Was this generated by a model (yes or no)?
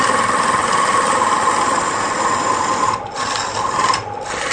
no